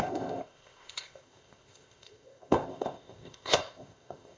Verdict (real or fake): fake